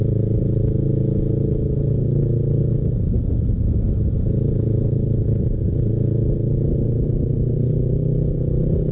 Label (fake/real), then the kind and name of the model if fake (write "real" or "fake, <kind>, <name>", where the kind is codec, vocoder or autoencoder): real